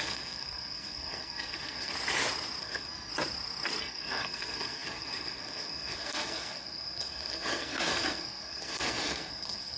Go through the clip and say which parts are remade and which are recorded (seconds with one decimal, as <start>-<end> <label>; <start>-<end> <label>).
0.0-1.9 remade; 1.9-2.6 recorded; 2.6-3.1 remade; 3.1-3.8 recorded; 3.8-9.8 remade